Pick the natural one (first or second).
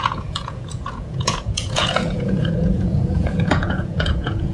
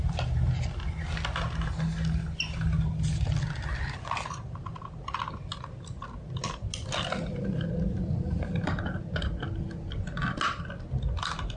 second